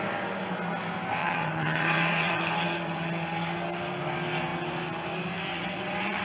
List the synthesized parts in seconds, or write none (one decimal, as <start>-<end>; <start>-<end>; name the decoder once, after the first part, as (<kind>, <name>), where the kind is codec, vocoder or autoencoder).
1.2-2.4 (vocoder, WaveNeXt); 5.5-6.2